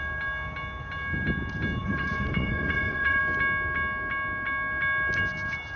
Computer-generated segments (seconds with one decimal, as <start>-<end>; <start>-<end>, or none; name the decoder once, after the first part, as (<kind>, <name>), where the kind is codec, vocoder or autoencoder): 1.8-3.2 (vocoder, Vocos)